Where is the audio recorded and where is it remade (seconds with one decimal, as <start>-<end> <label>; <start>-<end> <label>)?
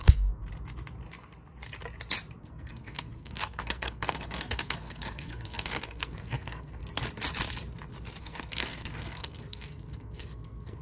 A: 0.0-0.4 remade; 0.4-2.4 recorded; 2.4-6.8 remade; 6.8-8.2 recorded; 8.2-10.8 remade